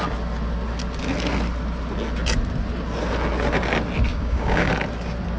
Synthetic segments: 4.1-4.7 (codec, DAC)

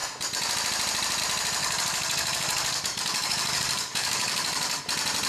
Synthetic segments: 1.6-4.8 (codec, DAC)

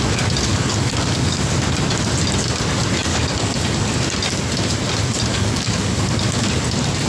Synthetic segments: 0.5-1.5 (codec, DAC); 3.1-3.9; 5.3-6.6

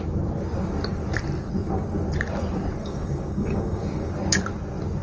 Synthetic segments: 2.8-4.1 (codec, DAC)

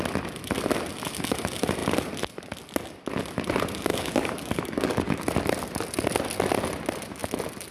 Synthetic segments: 3.9-5.2 (codec, DAC)

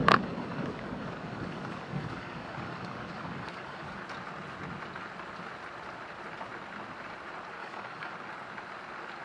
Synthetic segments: 0.0-4.0 (codec, DAC); 7.6-8.1

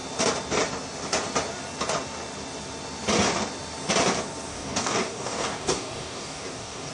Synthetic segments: 4.5-6.9 (codec, DAC)

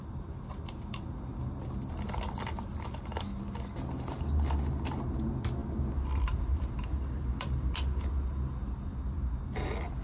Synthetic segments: none